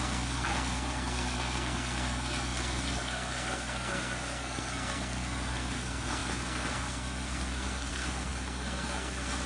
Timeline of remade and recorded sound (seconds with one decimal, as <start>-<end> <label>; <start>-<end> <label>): 0.0-9.5 remade